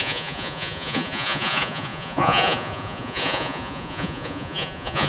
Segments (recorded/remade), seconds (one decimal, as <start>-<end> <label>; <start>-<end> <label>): 0.0-5.1 remade